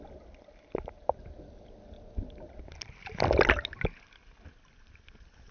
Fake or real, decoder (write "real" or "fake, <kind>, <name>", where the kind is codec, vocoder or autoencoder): real